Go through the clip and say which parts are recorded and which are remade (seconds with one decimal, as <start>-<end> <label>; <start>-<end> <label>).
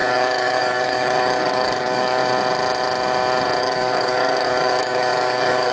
0.0-2.2 remade; 2.2-3.6 recorded; 3.6-5.7 remade